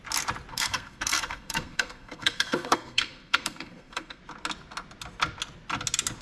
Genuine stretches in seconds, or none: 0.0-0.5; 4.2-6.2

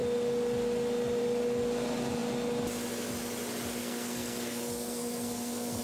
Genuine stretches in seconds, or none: 0.0-3.8

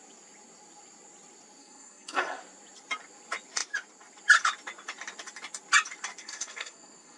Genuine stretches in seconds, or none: 0.0-1.6; 2.4-6.2

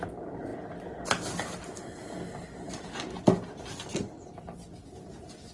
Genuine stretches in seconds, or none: 0.0-5.5

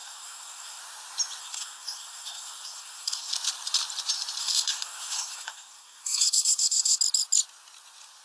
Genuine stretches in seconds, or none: 0.8-1.4; 3.3-4.4; 7.0-8.2

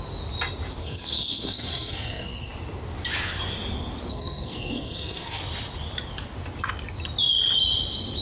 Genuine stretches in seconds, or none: 0.0-0.8; 2.5-4.1; 5.4-8.2

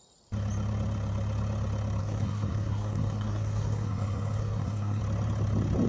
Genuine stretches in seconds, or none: 0.0-2.0; 5.0-5.9

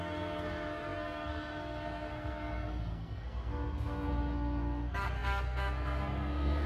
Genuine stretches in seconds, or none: none